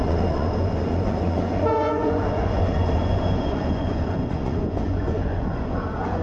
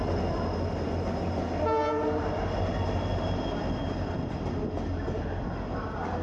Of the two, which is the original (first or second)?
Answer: second